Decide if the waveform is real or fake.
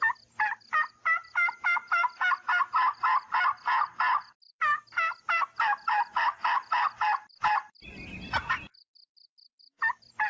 real